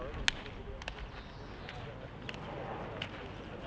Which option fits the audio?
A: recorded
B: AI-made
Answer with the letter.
A